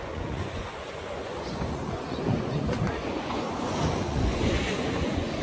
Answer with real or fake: fake